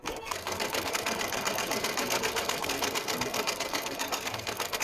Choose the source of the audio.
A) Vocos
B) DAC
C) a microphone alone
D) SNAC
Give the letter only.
D